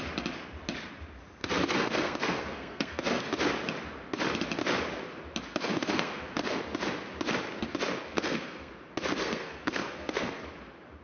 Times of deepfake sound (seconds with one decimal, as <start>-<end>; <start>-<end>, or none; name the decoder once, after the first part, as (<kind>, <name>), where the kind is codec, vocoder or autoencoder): 1.4-3.2 (codec, SNAC); 5.5-6.6; 8.1-8.7; 9.2-10.4